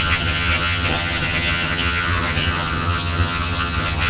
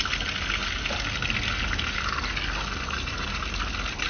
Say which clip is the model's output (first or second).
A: first